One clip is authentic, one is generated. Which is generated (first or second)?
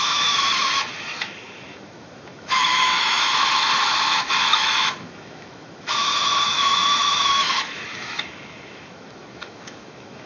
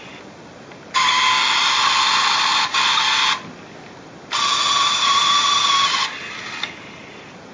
first